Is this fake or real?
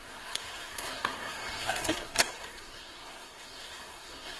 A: fake